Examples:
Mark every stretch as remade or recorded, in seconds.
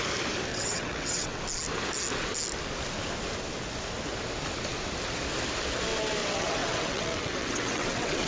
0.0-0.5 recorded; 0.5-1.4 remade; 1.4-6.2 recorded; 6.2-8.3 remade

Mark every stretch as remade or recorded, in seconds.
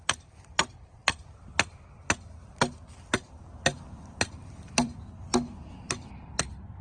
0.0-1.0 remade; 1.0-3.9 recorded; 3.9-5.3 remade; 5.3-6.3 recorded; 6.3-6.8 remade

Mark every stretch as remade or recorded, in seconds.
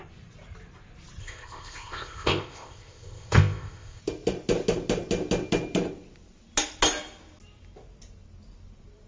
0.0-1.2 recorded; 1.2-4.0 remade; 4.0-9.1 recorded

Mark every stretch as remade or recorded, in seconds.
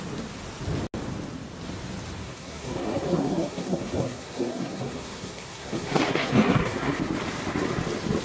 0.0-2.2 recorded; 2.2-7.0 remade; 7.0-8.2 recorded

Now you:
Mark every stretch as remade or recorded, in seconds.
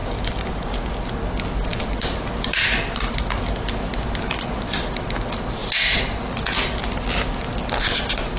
0.0-0.9 remade; 0.9-8.4 recorded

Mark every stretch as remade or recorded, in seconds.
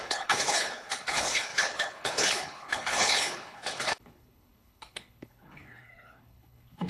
0.0-6.9 remade